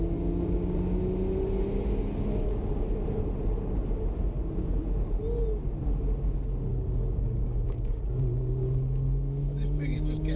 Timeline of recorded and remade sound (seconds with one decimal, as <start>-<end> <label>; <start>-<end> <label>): 0.0-6.7 recorded; 6.7-10.4 remade